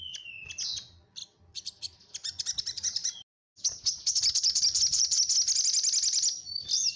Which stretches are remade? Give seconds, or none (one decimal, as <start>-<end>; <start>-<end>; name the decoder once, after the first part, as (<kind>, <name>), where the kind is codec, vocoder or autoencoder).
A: 1.2-1.8 (vocoder, BigVGAN v2); 4.2-5.2